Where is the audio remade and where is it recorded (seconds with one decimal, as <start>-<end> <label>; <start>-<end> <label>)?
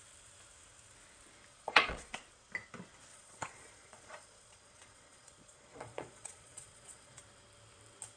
0.0-1.5 recorded; 1.5-2.2 remade; 2.2-3.1 recorded; 3.1-7.2 remade; 7.2-8.2 recorded